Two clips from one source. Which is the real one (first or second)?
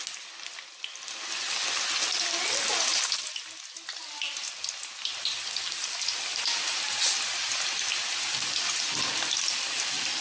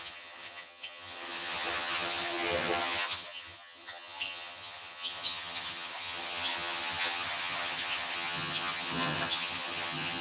first